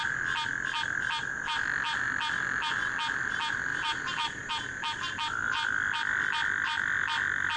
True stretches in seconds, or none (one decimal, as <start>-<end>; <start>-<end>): 0.0-3.7; 4.5-7.6